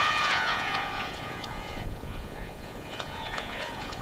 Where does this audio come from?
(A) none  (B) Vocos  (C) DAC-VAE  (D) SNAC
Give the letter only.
B